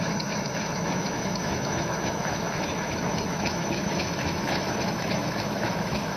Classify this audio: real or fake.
fake